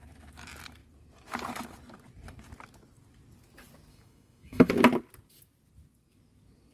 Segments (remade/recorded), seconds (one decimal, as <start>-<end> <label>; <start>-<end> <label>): 0.0-3.9 recorded; 3.9-4.7 remade; 4.7-6.7 recorded